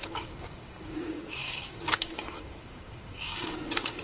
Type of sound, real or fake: fake